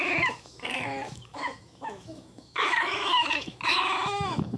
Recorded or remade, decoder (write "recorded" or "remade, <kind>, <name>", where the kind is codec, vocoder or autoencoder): remade, autoencoder, DAC-VAE